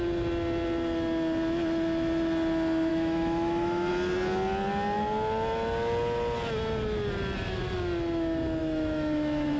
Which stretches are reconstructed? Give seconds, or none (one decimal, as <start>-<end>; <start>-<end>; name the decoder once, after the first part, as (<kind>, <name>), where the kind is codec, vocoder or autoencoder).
2.9-3.9 (autoencoder, DAC-VAE); 8.6-9.6